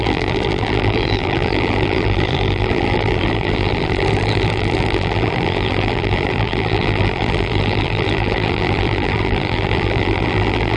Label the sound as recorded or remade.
remade